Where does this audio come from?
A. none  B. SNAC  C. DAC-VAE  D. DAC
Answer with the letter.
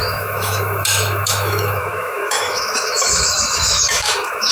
C